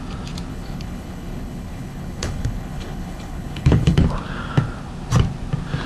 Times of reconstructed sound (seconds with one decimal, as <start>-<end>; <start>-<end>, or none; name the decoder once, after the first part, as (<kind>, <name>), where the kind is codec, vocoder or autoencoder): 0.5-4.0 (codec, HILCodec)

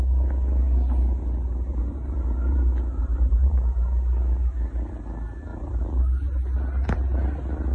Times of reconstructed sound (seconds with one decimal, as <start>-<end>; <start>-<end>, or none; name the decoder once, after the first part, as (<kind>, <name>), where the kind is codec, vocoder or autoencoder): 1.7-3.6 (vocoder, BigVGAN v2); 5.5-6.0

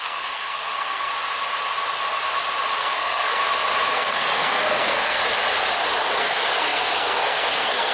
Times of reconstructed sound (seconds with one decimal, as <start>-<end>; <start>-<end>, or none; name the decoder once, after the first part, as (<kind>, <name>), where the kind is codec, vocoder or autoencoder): 0.0-1.1 (codec, SNAC); 2.8-3.4; 3.9-5.2; 6.2-7.9

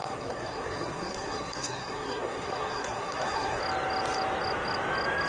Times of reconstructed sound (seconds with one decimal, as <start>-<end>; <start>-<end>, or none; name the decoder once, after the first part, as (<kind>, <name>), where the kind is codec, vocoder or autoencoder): 0.0-3.6 (codec, SNAC)